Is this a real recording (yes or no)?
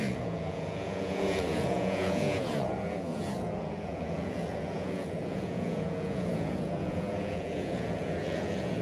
no